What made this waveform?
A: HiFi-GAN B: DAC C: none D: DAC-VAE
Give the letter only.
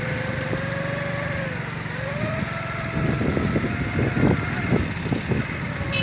C